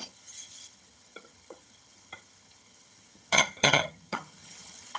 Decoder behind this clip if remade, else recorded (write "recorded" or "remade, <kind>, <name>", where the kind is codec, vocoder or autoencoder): remade, vocoder, HiFi-GAN